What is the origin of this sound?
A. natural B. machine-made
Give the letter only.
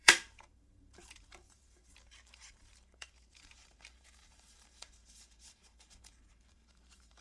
B